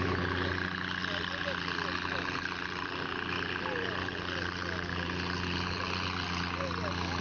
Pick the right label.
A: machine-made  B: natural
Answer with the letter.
B